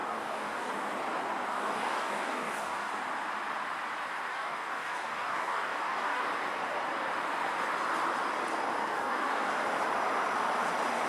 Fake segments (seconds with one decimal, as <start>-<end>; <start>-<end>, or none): 0.0-0.7; 1.5-2.9; 4.3-6.2; 8.8-9.5